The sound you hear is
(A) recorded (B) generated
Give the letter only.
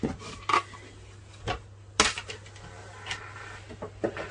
A